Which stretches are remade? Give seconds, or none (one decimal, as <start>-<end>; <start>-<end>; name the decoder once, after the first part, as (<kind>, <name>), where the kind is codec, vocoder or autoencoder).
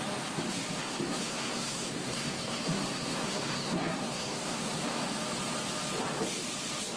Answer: 0.8-5.0 (codec, SNAC)